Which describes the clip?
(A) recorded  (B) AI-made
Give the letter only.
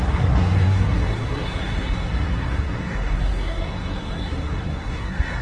B